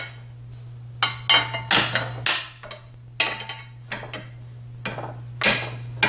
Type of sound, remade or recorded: recorded